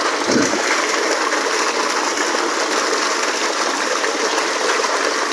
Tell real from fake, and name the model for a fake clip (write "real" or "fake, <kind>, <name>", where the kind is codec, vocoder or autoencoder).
real